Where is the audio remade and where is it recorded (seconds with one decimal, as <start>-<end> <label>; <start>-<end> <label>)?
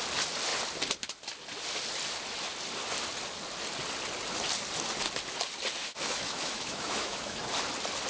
0.0-5.8 recorded; 5.8-7.4 remade; 7.4-8.1 recorded